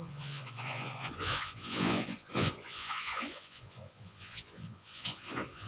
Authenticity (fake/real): fake